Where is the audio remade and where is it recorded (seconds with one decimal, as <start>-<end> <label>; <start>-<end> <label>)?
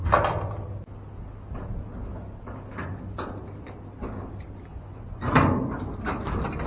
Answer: 0.0-4.7 recorded; 4.7-5.3 remade; 5.3-6.7 recorded